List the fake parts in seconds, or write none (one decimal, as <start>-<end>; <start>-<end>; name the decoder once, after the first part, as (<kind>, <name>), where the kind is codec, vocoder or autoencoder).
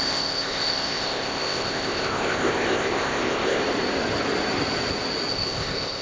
0.0-3.6 (codec, ZipCodec); 5.3-6.0